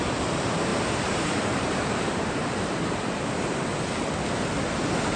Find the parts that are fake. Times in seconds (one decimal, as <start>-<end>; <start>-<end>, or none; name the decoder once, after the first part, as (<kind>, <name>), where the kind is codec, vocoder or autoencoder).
0.0-3.7 (vocoder, BigVGAN v2)